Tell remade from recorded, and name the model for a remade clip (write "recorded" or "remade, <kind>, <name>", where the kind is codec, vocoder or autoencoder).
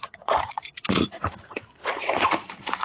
remade, vocoder, Vocos